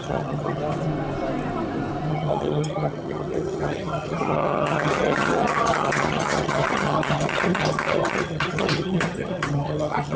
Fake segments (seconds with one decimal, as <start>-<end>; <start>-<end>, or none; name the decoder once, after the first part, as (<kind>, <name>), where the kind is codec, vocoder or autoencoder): 0.0-0.6 (vocoder, HiFi-GAN); 2.1-10.2